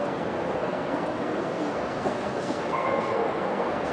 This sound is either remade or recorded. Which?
remade